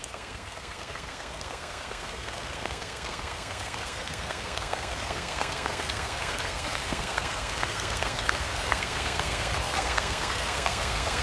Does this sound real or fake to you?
fake